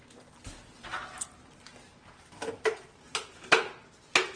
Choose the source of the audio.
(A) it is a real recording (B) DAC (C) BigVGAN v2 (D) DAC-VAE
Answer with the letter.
A